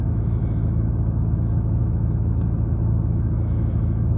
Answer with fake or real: fake